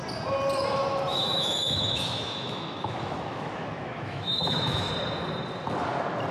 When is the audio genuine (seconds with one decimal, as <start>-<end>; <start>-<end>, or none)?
0.0-1.1; 4.9-6.3